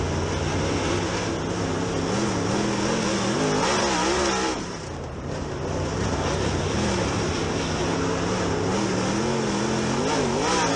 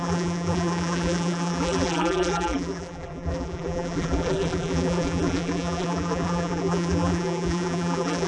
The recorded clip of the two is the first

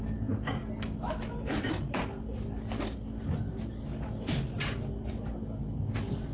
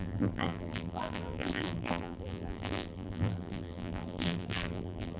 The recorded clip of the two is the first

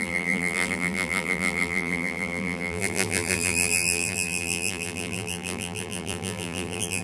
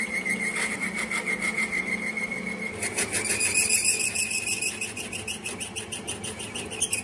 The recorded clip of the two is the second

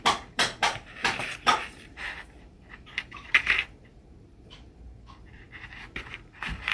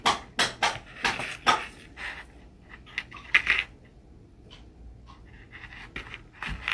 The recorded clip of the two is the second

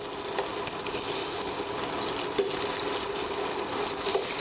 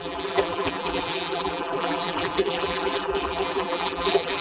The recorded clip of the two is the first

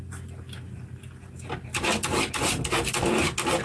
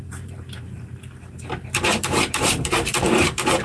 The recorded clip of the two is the first